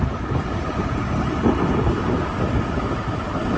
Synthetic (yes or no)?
no